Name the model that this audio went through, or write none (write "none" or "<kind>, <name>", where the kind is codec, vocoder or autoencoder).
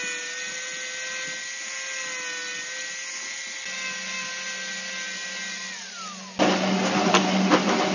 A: none